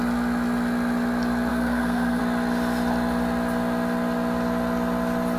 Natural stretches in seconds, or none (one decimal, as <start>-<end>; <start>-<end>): 0.0-1.5; 2.2-5.4